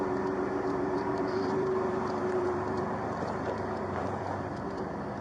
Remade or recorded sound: remade